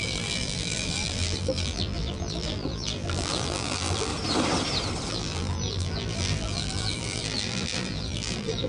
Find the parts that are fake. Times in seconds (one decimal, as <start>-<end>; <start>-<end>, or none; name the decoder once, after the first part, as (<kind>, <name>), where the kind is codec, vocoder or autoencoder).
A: 0.0-4.1 (vocoder, BigVGAN v2); 5.1-8.7